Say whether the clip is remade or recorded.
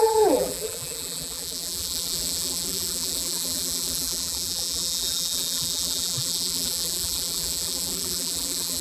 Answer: remade